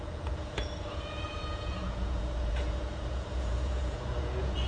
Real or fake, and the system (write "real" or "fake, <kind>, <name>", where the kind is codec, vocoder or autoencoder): fake, vocoder, Vocos